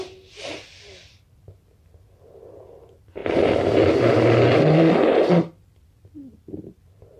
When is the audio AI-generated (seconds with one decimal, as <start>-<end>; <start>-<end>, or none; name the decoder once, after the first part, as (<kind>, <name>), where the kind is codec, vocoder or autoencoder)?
0.0-3.2 (vocoder, BigVGAN v2); 5.1-7.2